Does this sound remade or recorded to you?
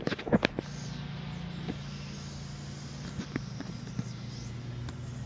recorded